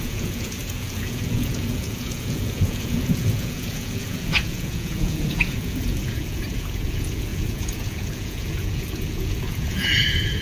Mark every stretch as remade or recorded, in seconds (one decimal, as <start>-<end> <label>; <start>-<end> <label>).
0.0-10.4 remade